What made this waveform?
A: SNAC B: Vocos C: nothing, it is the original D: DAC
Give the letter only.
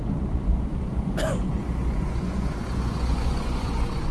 B